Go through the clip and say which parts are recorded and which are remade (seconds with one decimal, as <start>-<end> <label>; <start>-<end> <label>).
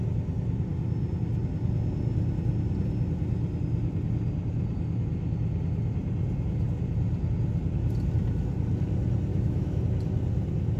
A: 0.0-9.3 recorded; 9.3-9.8 remade; 9.8-10.8 recorded